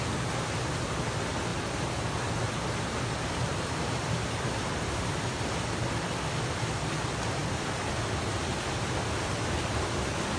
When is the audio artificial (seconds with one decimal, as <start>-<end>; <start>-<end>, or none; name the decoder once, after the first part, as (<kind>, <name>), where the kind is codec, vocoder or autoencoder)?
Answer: 1.5-2.0 (vocoder, BigVGAN v2); 3.5-5.4